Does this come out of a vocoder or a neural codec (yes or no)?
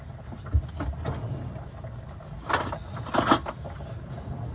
no